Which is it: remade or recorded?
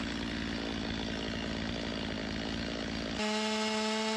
recorded